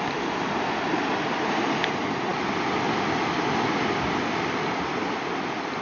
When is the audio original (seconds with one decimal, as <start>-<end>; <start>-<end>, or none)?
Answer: 0.0-5.8